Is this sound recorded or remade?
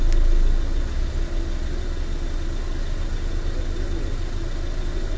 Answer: recorded